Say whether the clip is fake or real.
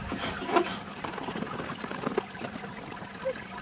real